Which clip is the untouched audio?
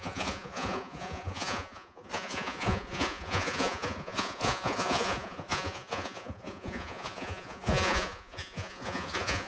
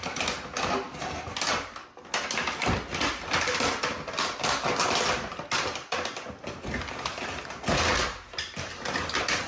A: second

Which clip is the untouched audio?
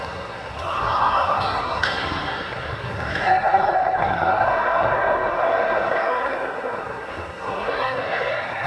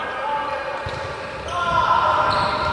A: second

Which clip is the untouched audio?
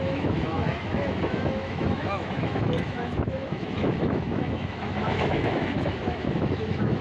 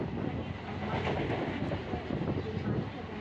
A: second